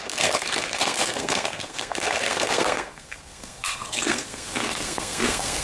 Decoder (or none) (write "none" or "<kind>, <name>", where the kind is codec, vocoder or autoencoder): codec, SNAC